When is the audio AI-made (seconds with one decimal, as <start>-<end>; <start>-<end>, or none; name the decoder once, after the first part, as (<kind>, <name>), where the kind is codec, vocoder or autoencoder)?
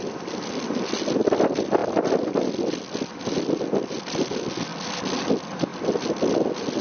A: none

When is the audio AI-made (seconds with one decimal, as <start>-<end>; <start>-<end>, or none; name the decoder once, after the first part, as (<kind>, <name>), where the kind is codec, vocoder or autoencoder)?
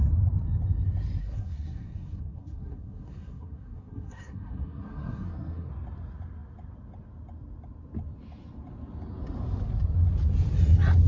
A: 1.2-5.7 (codec, SNAC)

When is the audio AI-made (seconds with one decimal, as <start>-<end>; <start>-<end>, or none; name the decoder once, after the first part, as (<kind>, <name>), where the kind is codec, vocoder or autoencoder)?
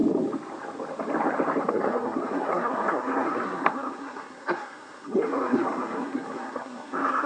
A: 1.6-7.3 (codec, SNAC)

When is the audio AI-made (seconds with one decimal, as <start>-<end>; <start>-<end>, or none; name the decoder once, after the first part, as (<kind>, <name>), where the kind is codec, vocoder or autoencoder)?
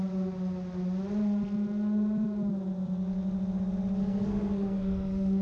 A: 4.0-5.4 (codec, SNAC)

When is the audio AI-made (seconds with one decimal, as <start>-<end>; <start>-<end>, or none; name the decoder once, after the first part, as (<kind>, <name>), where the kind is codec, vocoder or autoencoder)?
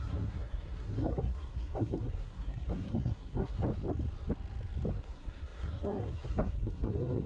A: 0.0-3.6 (codec, SNAC); 4.9-7.3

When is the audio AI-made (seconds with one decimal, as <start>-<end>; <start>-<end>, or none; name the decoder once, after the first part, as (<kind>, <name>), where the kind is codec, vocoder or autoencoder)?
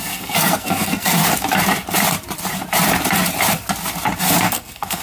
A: 0.0-1.2 (codec, SNAC); 4.2-5.0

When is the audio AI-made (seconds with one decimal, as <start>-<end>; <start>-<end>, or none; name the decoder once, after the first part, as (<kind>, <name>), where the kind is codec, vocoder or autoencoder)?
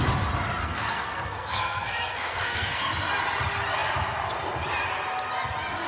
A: 0.6-2.8 (codec, SNAC)